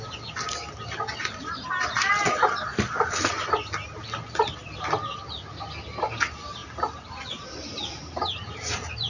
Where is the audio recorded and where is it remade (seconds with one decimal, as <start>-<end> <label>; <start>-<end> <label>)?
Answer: 0.0-9.1 recorded